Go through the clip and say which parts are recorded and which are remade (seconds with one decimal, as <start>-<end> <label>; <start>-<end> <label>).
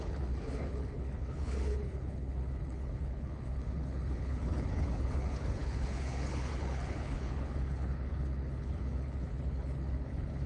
0.0-10.5 remade